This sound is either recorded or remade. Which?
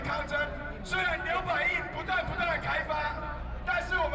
recorded